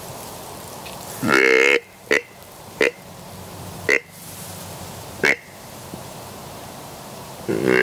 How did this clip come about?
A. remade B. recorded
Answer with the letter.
A